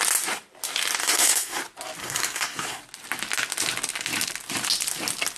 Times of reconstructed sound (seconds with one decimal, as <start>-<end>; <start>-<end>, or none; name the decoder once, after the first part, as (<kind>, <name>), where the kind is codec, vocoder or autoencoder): 1.0-1.6 (codec, SNAC); 2.0-2.8